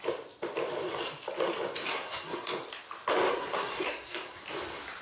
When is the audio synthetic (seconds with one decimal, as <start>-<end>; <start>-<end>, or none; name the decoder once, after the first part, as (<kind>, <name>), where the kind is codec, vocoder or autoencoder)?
1.9-2.5 (codec, SNAC); 3.3-4.4